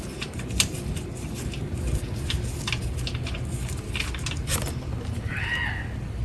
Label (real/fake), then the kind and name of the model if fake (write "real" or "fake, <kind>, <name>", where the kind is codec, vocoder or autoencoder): real